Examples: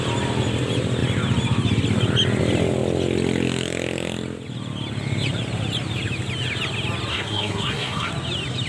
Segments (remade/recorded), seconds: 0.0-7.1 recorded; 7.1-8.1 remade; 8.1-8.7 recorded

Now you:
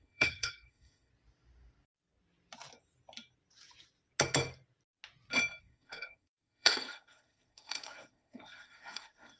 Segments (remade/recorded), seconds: 0.0-1.1 remade; 1.1-5.6 recorded; 5.6-9.4 remade

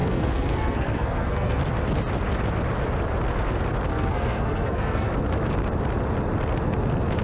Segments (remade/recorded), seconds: 0.0-1.6 remade; 1.6-3.9 recorded; 3.9-5.1 remade; 5.1-7.2 recorded

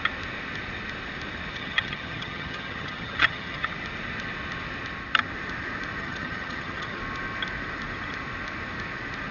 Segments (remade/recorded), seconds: 0.0-1.5 recorded; 1.5-3.7 remade; 3.7-6.0 recorded; 6.0-7.0 remade; 7.0-9.3 recorded

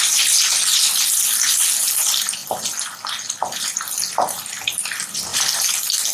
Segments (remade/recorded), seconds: 0.0-6.1 recorded